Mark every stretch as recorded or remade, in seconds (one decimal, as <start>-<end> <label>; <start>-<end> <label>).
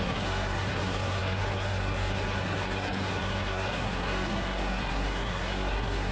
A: 0.0-6.1 remade